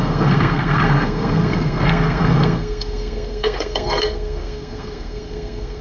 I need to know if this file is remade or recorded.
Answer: remade